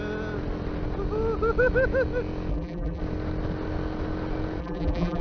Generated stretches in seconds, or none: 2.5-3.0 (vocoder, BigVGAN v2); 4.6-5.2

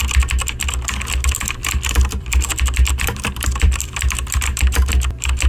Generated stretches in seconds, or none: 1.6-4.9 (vocoder, BigVGAN v2)

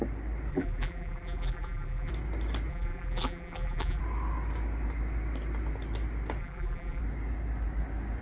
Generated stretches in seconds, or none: 0.5-2.1 (vocoder, BigVGAN v2); 2.7-4.0; 6.4-7.0

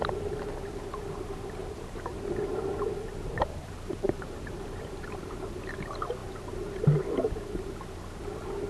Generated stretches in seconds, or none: 1.6-5.3 (vocoder, BigVGAN v2)

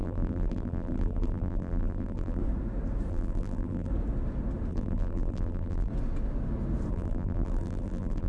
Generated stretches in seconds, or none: 0.0-2.4 (vocoder, BigVGAN v2); 3.1-3.9; 4.7-5.9; 6.9-8.3

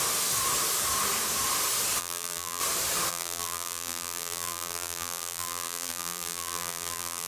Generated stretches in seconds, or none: 2.0-2.6 (vocoder, BigVGAN v2); 3.1-7.3

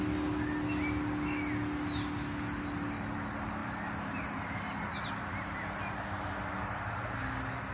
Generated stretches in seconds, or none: 3.6-4.1 (vocoder, BigVGAN v2)

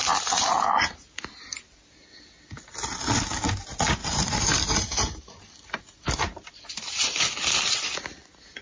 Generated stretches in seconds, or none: 0.0-0.5 (vocoder, BigVGAN v2); 4.0-6.5